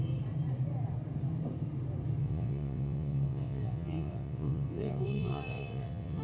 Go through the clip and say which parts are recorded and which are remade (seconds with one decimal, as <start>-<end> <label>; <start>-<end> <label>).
0.0-2.2 recorded; 2.2-6.2 remade